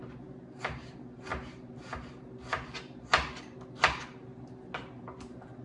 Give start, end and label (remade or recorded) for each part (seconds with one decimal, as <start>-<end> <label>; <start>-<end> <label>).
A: 0.0-5.6 recorded